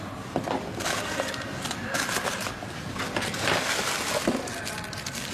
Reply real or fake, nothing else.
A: real